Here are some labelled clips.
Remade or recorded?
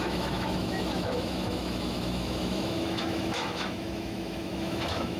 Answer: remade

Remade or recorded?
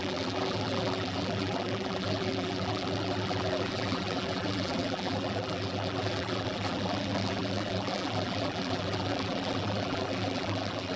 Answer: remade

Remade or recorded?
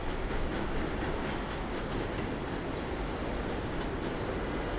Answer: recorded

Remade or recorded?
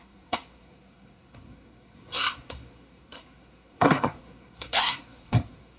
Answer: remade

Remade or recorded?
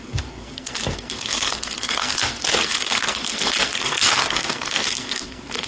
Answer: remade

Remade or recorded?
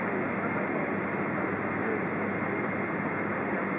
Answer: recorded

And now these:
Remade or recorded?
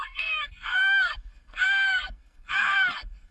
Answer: remade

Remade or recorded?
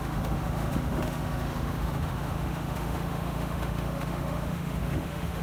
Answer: remade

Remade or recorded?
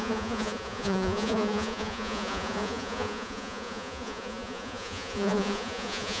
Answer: remade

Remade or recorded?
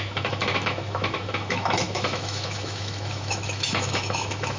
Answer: remade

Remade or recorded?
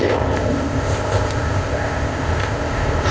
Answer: remade